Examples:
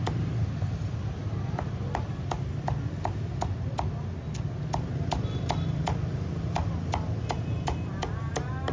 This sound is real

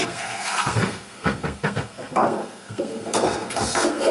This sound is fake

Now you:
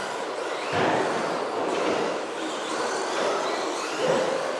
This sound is real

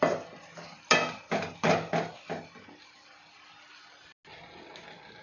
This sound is real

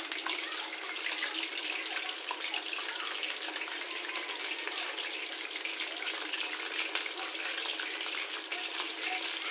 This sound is real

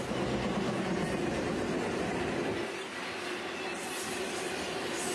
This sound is real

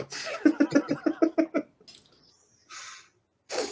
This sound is real